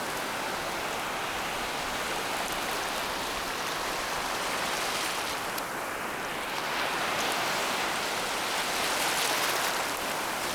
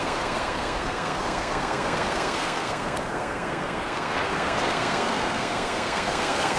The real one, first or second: first